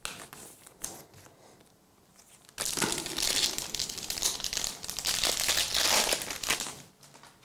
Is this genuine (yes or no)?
yes